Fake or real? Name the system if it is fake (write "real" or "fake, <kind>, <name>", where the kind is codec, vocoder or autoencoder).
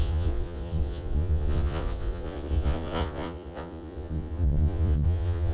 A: fake, vocoder, Vocos